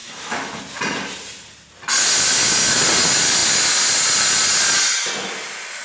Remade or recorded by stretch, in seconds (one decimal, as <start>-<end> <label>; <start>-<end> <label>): 0.0-0.6 remade; 0.6-5.8 recorded